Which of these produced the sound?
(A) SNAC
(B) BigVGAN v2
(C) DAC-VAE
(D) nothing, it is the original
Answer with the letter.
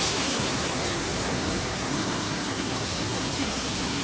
A